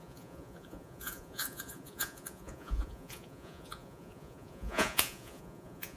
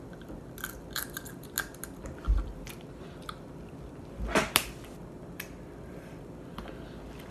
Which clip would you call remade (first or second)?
first